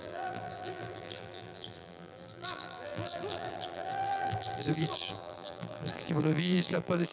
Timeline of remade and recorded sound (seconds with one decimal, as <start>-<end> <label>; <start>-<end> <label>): 0.0-7.1 remade